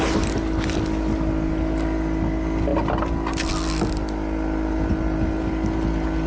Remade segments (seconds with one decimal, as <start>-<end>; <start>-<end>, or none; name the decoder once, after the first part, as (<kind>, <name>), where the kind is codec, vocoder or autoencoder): none